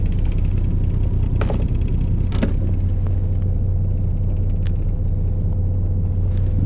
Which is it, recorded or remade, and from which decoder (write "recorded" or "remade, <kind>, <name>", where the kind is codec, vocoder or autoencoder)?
recorded